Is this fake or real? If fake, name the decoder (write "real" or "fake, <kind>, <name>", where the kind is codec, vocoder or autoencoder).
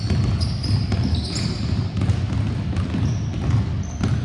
real